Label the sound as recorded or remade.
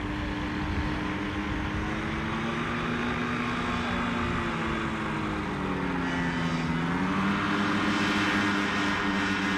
recorded